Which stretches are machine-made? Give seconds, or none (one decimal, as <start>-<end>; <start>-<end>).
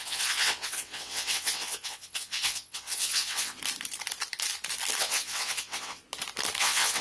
0.0-3.6; 5.0-6.0; 6.6-7.0